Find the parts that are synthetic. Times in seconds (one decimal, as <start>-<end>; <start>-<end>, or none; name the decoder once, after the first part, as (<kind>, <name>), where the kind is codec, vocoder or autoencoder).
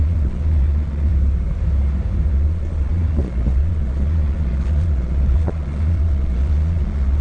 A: 0.0-1.1 (vocoder, Vocos); 2.3-7.2